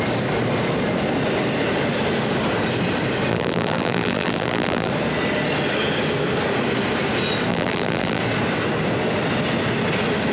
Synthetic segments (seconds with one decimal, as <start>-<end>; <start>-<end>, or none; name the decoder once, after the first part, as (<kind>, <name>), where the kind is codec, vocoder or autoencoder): 3.3-4.9 (vocoder, BigVGAN v2); 7.5-8.2